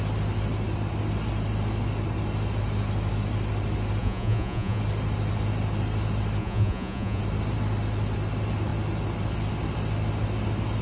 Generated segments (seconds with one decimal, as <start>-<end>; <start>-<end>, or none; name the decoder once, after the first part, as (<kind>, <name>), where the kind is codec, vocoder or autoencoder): 4.0-4.8 (vocoder, Vocos); 6.4-7.2